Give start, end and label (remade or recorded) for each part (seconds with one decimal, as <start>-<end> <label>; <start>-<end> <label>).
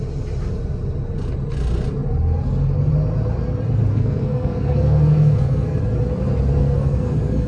0.0-3.9 recorded; 3.9-5.8 remade; 5.8-6.6 recorded; 6.6-7.5 remade